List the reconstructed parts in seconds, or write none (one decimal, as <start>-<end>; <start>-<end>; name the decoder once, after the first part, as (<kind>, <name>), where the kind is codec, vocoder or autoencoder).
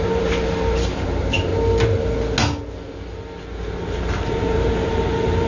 0.0-1.5 (vocoder, BigVGAN v2); 3.5-5.5